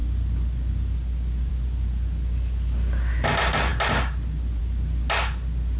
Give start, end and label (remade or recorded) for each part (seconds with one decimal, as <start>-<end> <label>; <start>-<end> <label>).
0.0-5.8 recorded